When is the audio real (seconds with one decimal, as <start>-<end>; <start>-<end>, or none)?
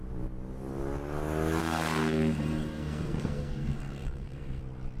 0.0-1.6; 4.6-5.0